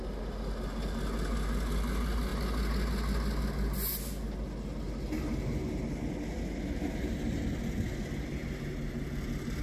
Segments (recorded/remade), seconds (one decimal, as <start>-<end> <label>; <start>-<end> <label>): 0.0-9.6 recorded